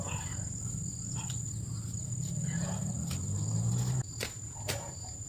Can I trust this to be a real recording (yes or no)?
yes